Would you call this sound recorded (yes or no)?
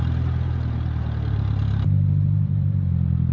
no